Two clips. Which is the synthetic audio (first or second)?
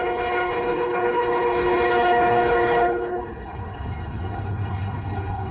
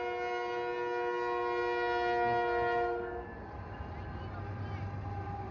first